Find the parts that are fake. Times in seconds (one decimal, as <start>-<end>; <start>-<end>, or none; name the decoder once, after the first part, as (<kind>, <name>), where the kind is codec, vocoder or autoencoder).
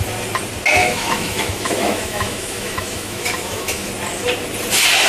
0.8-3.9 (autoencoder, DAC-VAE)